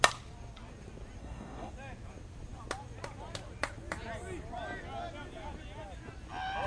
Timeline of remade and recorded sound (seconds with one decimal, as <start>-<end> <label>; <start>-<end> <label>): 0.0-1.2 recorded; 1.2-1.7 remade; 1.7-6.7 recorded